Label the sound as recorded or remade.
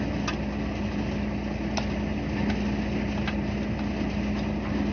recorded